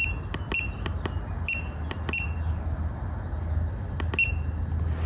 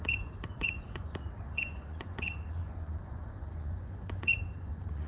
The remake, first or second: second